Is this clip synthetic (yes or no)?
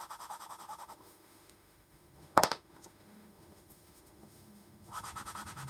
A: yes